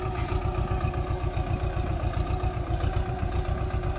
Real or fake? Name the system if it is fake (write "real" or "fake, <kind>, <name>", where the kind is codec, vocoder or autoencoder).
real